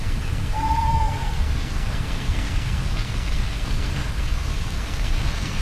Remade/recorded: remade